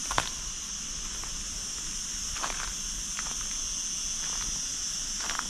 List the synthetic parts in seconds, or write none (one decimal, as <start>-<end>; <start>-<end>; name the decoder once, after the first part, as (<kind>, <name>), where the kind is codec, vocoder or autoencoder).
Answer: none